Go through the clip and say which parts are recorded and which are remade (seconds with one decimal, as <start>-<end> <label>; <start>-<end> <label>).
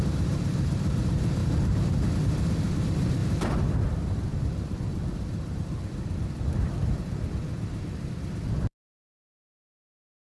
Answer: 0.0-1.4 remade; 1.4-2.2 recorded; 2.2-10.3 remade